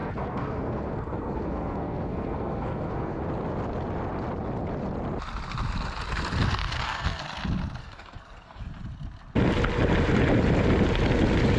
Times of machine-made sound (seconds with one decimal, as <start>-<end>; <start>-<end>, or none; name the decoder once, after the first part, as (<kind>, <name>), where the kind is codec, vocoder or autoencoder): 0.0-3.2 (codec, SNAC); 6.6-7.2; 7.8-8.6